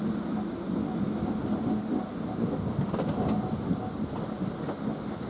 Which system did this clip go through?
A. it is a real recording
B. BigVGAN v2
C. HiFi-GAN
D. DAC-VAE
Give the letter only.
A